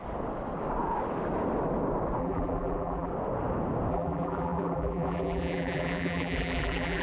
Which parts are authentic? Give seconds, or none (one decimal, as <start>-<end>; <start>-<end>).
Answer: 0.0-2.2; 3.1-3.9